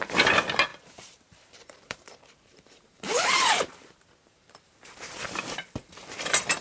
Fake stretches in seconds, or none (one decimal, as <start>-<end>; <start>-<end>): 0.7-4.7